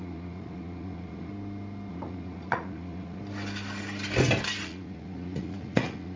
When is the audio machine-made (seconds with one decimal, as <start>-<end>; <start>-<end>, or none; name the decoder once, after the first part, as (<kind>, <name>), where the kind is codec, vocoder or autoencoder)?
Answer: 0.0-1.3 (vocoder, Vocos); 1.9-3.2; 4.6-6.2

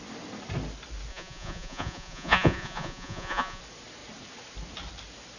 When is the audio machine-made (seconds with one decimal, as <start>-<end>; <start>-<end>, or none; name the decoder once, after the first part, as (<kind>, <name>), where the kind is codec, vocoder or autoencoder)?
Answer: 1.1-3.6 (vocoder, Vocos)

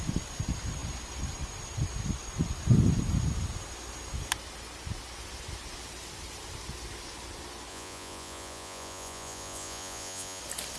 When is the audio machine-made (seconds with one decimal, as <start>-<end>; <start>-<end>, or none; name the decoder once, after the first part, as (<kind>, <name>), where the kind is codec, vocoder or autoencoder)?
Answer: 7.7-10.4 (vocoder, Vocos)

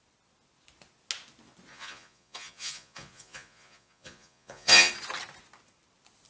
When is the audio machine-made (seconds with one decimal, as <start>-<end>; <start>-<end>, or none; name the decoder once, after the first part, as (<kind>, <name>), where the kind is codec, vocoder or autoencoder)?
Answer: 1.7-4.9 (vocoder, Vocos)

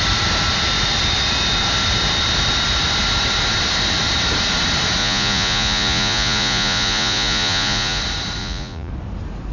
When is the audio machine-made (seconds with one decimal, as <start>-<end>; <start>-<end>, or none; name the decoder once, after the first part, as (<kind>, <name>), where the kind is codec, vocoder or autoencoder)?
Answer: 5.0-8.0 (vocoder, Vocos); 8.4-8.9